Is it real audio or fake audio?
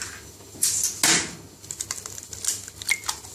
real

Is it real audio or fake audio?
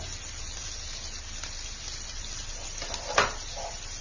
real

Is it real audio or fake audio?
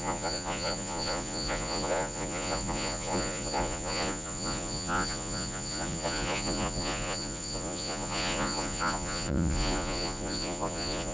fake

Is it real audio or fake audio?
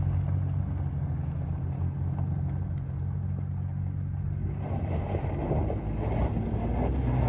real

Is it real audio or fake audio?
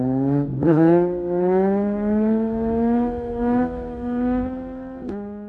fake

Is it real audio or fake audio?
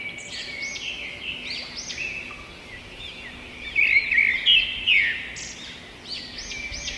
real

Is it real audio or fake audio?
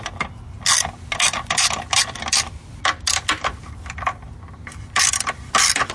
real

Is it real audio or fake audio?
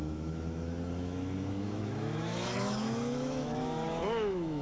fake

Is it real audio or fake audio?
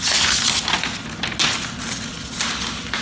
real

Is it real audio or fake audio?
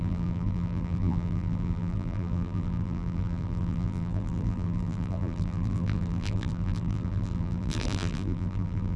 fake